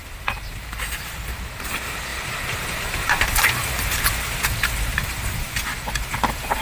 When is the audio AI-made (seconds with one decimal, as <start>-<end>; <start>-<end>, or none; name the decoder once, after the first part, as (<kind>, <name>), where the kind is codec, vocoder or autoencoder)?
0.0-0.8 (vocoder, BigVGAN v2); 2.1-5.9